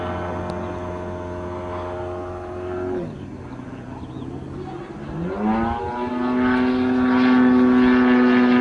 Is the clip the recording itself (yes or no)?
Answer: yes